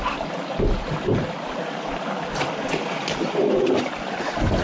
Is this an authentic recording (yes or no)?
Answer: yes